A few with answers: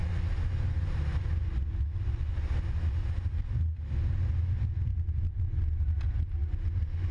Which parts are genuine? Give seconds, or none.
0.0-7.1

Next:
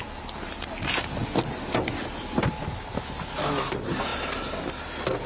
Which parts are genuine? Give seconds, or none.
0.0-5.3

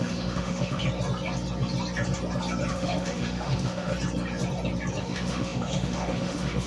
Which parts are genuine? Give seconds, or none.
0.8-2.7; 3.9-5.0

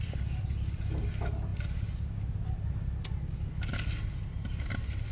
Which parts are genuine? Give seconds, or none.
0.0-5.1

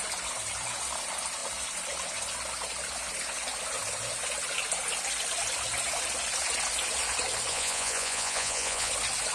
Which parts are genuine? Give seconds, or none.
0.0-7.5; 8.9-9.3

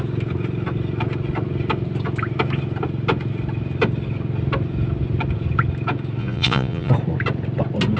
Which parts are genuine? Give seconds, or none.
0.0-6.2; 6.9-8.0

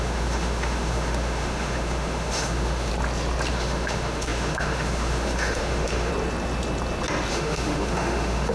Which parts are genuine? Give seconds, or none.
2.9-3.5; 6.1-7.3

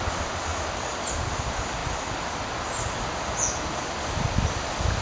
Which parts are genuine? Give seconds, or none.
0.5-1.1; 1.8-3.6